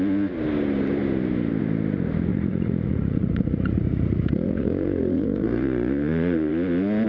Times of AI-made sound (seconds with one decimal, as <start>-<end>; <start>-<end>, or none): 2.3-6.5